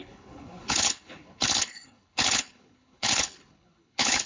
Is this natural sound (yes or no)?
no